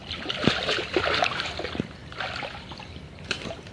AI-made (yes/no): yes